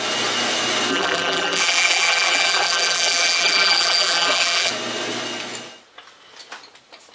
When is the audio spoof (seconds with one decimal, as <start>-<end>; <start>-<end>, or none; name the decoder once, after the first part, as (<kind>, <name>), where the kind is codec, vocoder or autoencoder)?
0.9-4.7 (vocoder, BigVGAN v2)